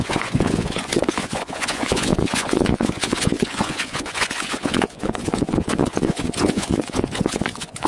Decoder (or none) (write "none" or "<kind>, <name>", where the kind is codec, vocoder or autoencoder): vocoder, Vocos